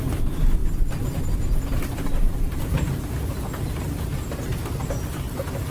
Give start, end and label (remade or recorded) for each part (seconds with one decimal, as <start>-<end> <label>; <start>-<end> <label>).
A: 0.0-5.7 recorded